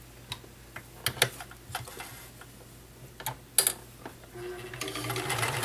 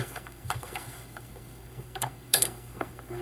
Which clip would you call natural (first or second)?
first